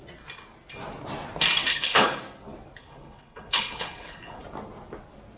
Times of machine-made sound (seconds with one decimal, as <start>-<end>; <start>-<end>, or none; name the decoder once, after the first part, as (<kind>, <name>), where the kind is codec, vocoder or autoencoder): 1.7-2.2 (codec, HILCodec); 2.8-4.4